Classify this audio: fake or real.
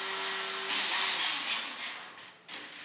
real